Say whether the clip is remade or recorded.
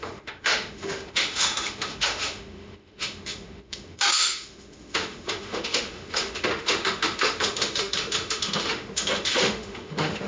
remade